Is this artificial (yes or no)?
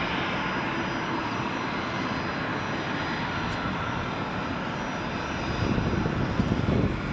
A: no